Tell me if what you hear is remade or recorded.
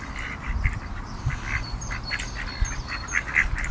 recorded